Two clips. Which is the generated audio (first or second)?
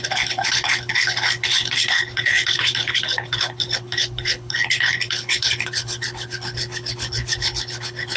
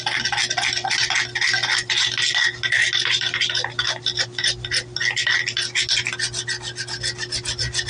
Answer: first